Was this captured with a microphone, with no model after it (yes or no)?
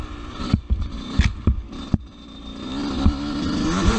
yes